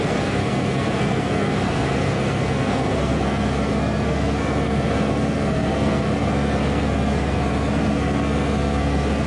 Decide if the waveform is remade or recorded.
remade